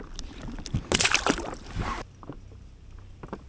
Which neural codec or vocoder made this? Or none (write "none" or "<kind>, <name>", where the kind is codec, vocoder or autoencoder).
none